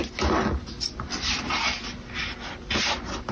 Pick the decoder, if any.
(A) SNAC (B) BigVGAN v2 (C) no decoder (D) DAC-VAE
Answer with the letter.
C